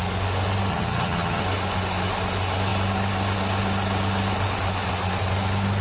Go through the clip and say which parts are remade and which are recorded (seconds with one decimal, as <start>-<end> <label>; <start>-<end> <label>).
0.0-0.7 recorded; 0.7-1.4 remade; 1.4-5.8 recorded